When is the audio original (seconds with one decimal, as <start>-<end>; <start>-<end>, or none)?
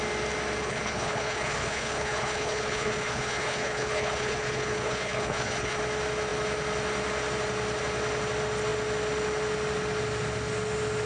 0.0-0.6; 5.8-11.1